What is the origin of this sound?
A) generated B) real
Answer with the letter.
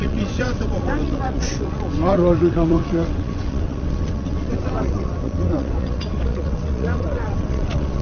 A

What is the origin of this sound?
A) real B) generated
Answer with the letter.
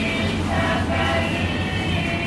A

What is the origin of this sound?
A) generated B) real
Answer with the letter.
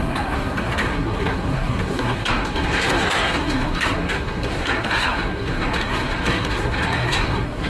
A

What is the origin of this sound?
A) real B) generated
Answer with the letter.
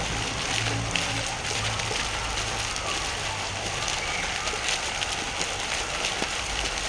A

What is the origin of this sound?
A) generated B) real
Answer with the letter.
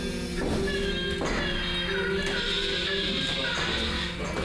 B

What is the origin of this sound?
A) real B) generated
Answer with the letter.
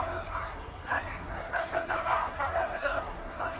B